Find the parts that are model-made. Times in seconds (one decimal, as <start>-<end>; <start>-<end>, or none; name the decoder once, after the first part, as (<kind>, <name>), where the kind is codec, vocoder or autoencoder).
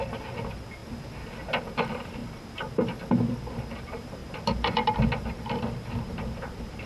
0.0-0.8 (vocoder, BigVGAN v2); 1.6-2.2; 3.5-6.9